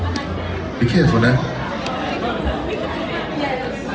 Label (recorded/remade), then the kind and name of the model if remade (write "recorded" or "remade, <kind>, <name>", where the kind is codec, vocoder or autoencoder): recorded